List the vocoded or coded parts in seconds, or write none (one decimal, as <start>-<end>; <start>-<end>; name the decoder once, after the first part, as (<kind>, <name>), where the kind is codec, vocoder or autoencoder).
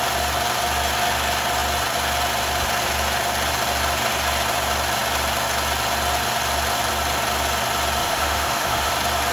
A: 8.0-8.9 (autoencoder, DAC-VAE)